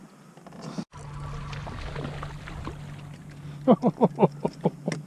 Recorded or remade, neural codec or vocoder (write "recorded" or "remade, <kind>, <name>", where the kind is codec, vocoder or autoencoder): recorded